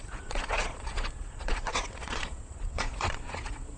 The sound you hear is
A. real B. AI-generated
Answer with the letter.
B